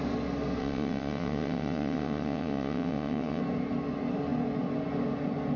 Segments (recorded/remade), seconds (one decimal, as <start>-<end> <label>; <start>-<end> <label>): 0.0-0.6 recorded; 0.6-3.4 remade; 3.4-5.6 recorded